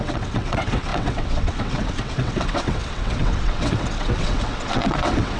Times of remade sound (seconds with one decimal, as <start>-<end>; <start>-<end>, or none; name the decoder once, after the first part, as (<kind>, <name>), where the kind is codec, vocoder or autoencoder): 0.0-5.4 (vocoder, WaveNeXt)